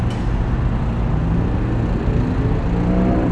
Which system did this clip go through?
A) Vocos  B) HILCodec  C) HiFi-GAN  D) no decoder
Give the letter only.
D